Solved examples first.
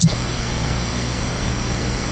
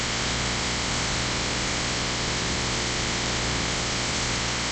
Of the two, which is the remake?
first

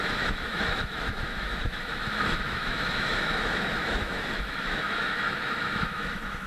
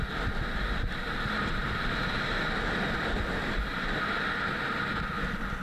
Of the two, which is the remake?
first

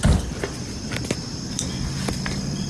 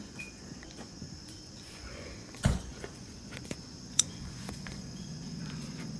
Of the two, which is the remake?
second